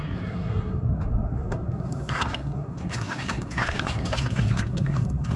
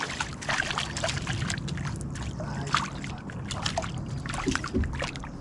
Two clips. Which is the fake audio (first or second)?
first